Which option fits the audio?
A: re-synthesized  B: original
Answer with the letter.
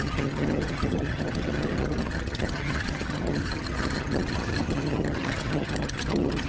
A